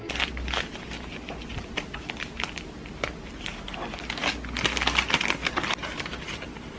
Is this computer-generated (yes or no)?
no